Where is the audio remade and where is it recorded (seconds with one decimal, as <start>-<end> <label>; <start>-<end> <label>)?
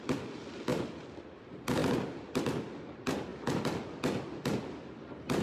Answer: 0.0-5.4 recorded